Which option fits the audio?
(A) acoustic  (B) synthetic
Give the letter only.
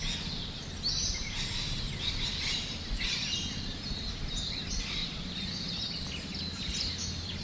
A